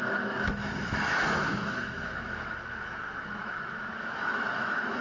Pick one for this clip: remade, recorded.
remade